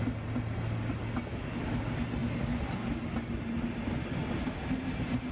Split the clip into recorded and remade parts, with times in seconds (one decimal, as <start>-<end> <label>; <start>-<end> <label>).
0.0-1.3 recorded; 1.3-1.8 remade; 1.8-5.3 recorded